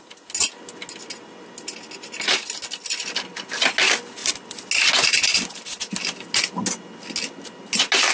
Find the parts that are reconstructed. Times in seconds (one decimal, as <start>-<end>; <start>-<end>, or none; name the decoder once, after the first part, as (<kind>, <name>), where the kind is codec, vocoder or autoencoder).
none